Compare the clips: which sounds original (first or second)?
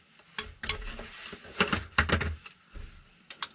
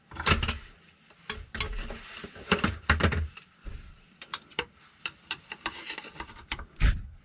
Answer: first